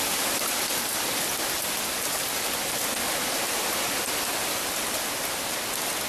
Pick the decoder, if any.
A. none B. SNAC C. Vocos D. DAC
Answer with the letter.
A